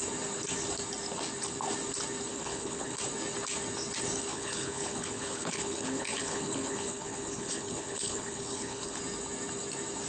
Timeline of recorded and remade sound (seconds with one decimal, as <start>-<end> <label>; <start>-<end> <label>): 0.0-2.3 recorded; 2.3-3.0 remade; 3.0-4.3 recorded; 4.3-9.0 remade; 9.0-10.1 recorded